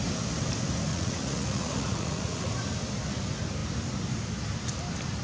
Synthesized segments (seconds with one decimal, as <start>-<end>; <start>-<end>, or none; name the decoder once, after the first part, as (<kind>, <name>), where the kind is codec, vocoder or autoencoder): 0.9-2.5 (vocoder, Vocos)